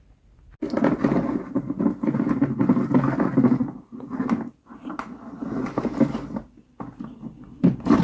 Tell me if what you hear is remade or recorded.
recorded